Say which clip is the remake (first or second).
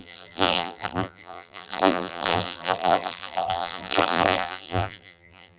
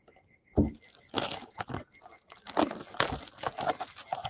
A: first